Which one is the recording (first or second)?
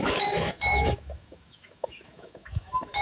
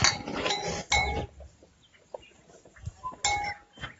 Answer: second